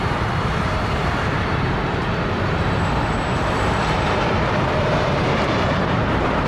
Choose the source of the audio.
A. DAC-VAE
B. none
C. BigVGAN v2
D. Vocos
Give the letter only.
C